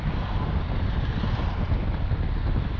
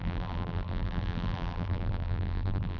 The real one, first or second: first